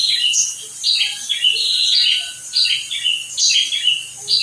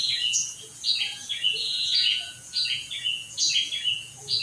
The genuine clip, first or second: first